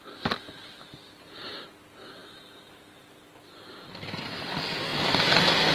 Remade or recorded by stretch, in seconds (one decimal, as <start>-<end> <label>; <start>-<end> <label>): 0.0-2.2 recorded; 2.2-4.3 remade; 4.3-4.9 recorded; 4.9-5.7 remade